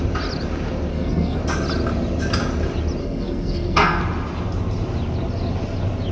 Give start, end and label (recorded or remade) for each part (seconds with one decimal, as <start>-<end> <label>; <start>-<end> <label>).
0.0-0.9 recorded; 0.9-1.4 remade; 1.4-3.0 recorded; 3.0-4.0 remade; 4.0-6.1 recorded